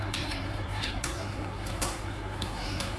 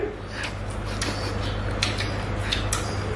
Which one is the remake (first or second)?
first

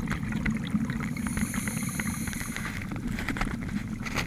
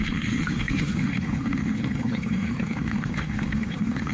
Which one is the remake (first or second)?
second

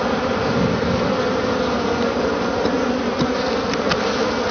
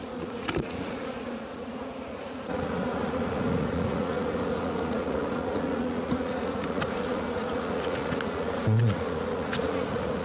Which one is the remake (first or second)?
second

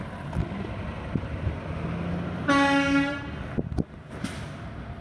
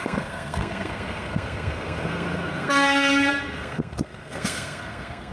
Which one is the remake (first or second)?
second